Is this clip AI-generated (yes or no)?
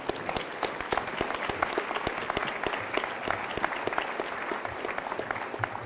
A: no